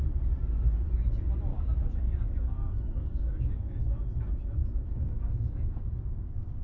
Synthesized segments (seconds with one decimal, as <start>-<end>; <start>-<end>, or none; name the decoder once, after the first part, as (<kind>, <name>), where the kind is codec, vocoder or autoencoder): 1.5-3.9 (codec, DAC); 4.6-5.8